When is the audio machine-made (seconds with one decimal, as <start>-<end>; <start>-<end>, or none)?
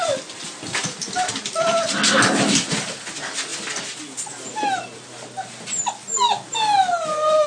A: none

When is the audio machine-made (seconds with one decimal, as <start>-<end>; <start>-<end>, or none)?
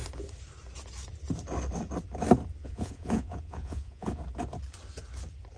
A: 2.6-4.2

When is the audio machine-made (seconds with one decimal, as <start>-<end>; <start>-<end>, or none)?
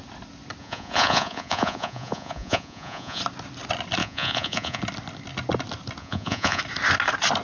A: 0.6-3.2; 4.0-4.8; 6.0-6.6